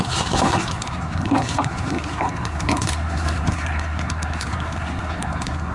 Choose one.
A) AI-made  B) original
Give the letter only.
A